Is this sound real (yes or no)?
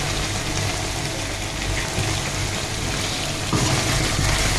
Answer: yes